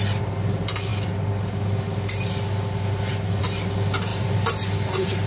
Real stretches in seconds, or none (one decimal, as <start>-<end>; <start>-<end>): 0.0-5.3